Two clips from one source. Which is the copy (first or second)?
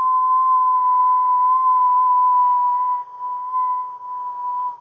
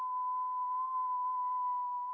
second